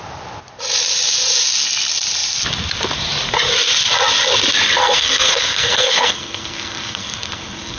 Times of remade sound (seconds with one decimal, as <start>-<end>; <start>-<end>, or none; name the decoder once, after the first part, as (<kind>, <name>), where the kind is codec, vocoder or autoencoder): 4.8-7.8 (codec, SNAC)